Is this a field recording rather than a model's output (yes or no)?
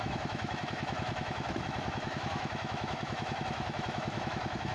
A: no